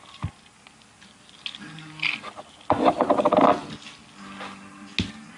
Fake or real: real